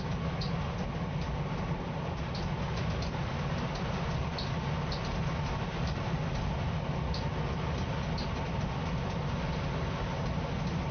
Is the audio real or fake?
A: real